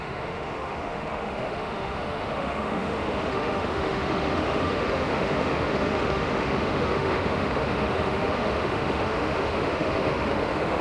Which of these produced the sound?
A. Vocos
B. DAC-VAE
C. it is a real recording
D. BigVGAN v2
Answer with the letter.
B